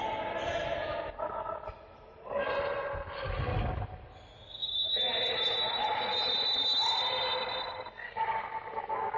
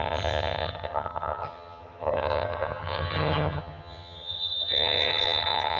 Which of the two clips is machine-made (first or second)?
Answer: second